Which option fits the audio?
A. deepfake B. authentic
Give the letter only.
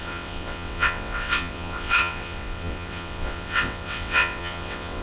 A